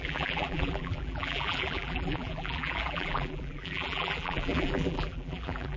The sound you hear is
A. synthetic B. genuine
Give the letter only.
A